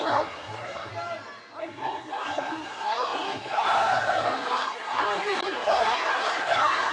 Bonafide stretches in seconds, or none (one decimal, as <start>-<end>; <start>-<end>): 0.9-1.6